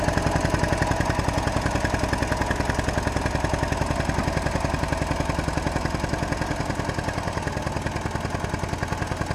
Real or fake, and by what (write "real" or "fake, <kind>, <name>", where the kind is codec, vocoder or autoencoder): real